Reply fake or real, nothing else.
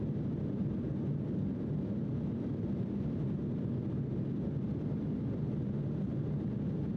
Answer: real